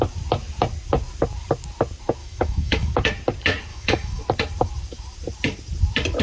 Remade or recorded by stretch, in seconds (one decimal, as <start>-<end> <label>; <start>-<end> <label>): 0.0-2.2 recorded; 2.2-2.9 remade; 2.9-3.7 recorded; 3.7-4.2 remade; 4.2-6.2 recorded